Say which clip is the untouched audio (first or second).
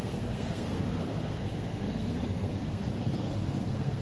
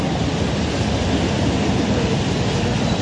second